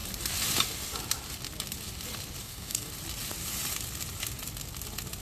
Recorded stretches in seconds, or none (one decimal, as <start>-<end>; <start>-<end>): 0.0-2.4; 2.9-5.2